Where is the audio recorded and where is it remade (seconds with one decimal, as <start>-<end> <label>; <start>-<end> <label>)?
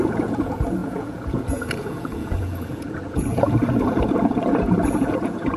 0.0-5.6 remade